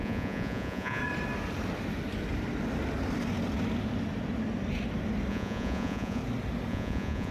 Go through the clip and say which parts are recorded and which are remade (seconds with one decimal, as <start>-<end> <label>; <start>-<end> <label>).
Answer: 0.0-1.0 remade; 1.0-5.3 recorded; 5.3-6.2 remade; 6.2-6.7 recorded; 6.7-7.3 remade